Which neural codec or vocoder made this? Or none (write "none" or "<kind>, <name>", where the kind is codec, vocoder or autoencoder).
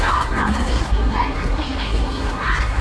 codec, SNAC